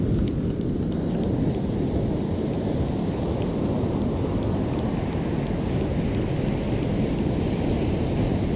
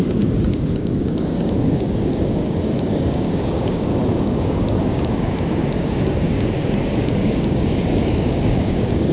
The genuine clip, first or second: first